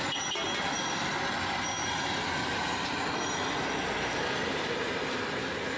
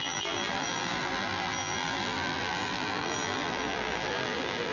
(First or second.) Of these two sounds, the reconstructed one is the second